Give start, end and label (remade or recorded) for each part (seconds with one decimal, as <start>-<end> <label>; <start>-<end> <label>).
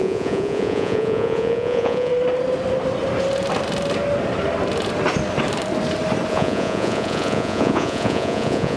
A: 0.0-2.1 remade; 2.1-6.3 recorded; 6.3-8.8 remade